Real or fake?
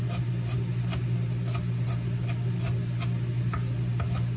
real